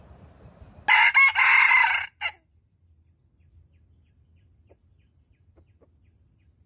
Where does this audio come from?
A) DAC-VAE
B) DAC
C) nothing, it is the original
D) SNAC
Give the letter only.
C